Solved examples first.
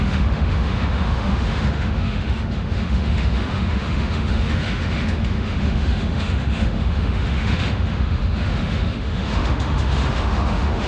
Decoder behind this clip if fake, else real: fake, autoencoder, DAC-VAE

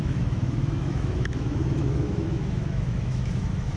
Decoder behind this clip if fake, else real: fake, autoencoder, DAC-VAE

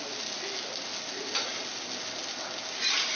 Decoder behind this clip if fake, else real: real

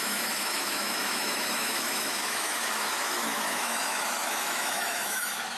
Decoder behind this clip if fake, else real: fake, autoencoder, DAC-VAE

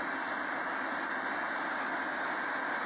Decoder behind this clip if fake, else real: real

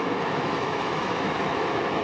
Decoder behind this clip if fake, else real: fake, autoencoder, DAC-VAE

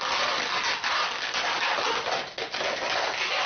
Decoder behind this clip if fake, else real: real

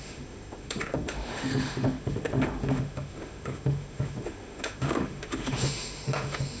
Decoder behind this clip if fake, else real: fake, autoencoder, DAC-VAE